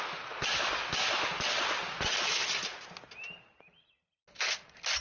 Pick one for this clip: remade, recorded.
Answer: recorded